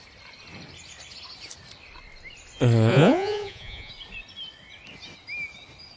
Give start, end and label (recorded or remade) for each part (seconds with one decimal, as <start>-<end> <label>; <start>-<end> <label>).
0.0-2.9 recorded; 2.9-3.9 remade; 3.9-6.0 recorded